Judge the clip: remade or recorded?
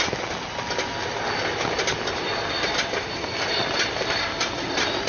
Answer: recorded